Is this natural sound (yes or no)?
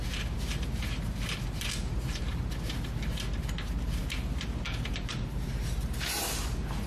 no